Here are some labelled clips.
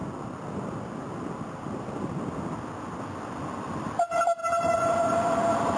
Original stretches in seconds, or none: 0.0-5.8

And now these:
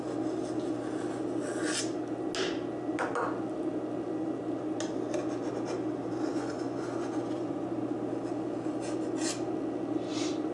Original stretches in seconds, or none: 0.0-6.3; 7.7-10.5

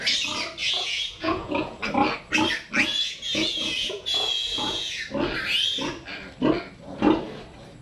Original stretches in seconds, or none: 0.0-0.6; 1.8-2.9; 5.0-7.8